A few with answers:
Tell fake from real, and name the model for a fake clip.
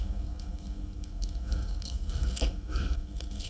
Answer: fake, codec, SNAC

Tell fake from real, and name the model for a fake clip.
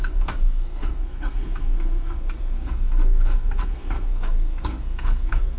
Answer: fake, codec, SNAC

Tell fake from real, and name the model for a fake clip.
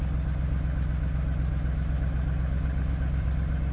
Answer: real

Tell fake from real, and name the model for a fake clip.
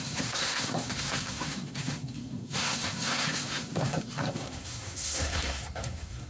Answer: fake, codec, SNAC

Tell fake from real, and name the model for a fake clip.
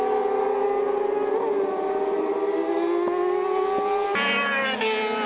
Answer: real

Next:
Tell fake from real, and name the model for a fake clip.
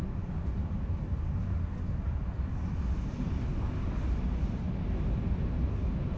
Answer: real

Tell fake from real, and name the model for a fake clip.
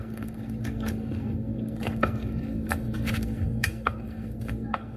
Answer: fake, codec, SNAC